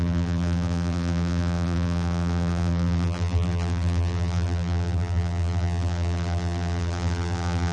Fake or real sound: fake